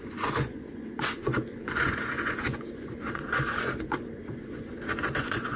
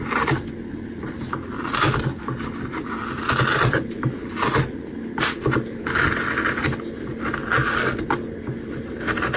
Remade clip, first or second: first